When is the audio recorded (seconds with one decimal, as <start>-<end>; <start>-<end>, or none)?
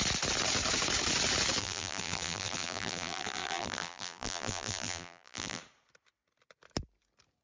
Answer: 0.0-1.6; 5.6-7.4